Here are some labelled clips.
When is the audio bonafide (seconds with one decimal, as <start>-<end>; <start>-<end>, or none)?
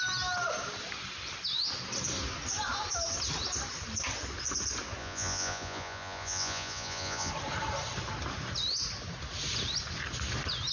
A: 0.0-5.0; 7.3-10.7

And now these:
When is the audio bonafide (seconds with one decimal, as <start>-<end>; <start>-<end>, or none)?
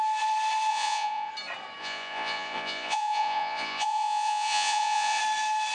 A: 0.0-0.7; 1.3-1.8; 5.2-5.7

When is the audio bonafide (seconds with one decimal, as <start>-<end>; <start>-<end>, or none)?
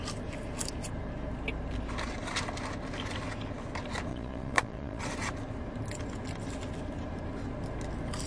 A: 0.0-4.1; 5.0-8.3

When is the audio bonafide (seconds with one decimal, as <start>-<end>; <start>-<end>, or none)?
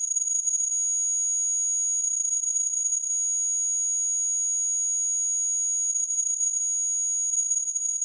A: 0.7-2.0; 3.1-5.9; 6.6-7.3